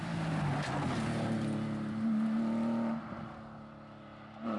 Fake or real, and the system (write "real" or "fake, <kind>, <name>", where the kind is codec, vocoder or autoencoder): real